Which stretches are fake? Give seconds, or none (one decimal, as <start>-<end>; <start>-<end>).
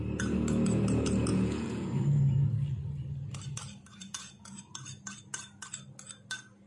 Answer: 1.3-1.9; 4.0-4.6